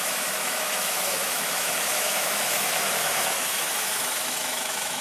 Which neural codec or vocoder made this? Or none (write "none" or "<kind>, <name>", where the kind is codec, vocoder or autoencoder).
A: autoencoder, DAC-VAE